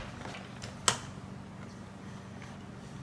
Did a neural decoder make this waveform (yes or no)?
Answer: no